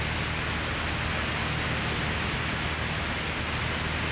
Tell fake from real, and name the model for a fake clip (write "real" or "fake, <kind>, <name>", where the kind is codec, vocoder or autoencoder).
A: real